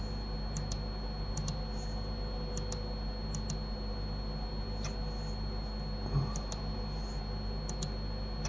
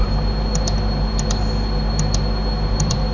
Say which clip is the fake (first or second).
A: second